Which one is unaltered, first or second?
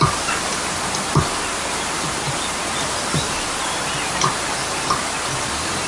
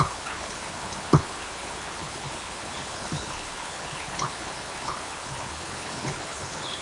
first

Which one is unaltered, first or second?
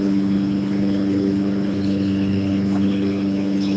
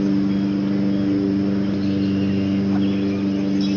second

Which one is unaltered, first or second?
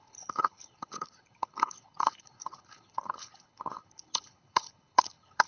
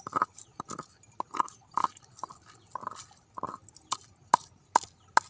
second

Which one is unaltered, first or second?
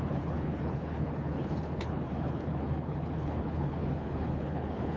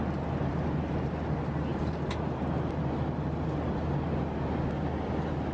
second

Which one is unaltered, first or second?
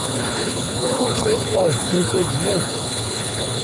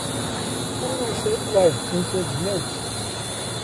second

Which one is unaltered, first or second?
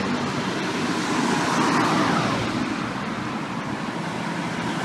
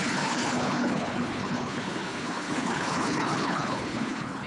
first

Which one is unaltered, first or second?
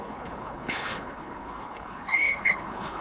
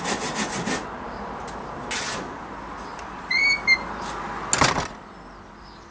second